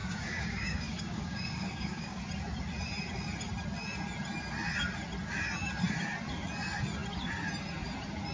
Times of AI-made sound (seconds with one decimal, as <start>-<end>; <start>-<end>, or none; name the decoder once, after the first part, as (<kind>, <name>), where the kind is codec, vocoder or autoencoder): 0.0-2.2 (codec, DAC)